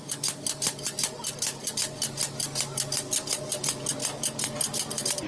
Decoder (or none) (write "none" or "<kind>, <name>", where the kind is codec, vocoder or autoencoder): none